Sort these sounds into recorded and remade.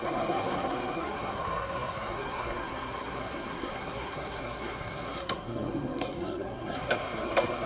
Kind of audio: remade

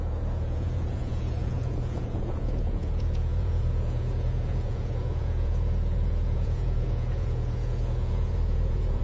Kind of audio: remade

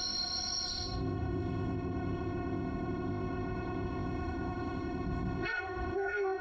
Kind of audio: remade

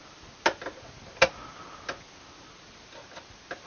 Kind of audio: recorded